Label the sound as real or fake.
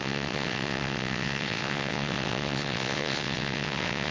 fake